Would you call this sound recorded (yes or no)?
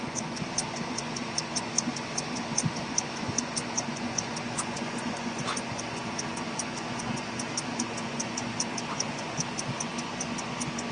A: no